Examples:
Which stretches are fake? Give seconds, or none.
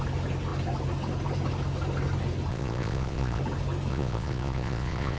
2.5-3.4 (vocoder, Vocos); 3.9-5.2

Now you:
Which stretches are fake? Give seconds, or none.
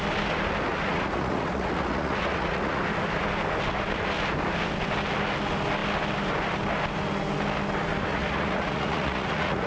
0.7-2.8 (vocoder, Vocos); 8.1-9.7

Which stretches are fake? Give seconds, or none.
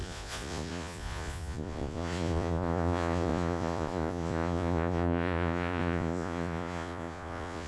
0.0-7.7 (vocoder, Vocos)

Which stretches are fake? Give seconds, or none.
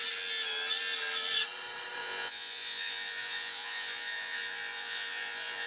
2.0-5.7 (vocoder, Vocos)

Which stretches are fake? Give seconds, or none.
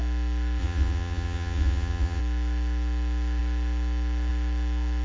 0.6-2.2 (vocoder, Vocos)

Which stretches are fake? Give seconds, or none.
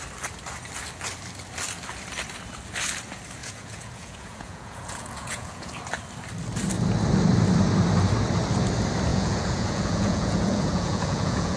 3.4-5.7 (vocoder, Vocos); 9.1-11.6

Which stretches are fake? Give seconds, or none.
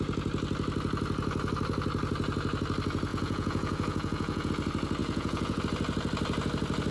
3.1-4.5 (vocoder, Vocos); 5.0-5.6